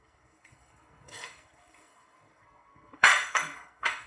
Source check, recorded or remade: remade